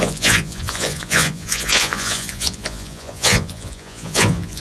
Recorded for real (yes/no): no